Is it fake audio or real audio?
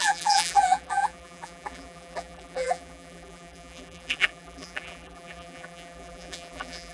fake